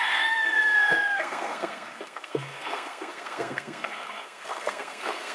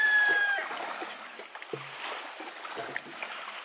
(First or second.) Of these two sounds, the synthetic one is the first